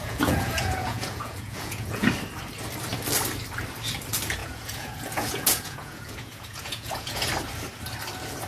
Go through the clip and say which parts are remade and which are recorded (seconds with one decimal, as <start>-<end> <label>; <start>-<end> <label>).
0.0-2.1 remade; 2.1-4.4 recorded; 4.4-7.3 remade; 7.3-8.5 recorded